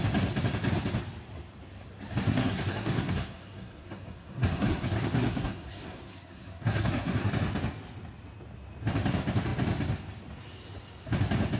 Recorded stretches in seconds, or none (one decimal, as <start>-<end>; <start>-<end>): 0.0-2.2; 7.3-11.6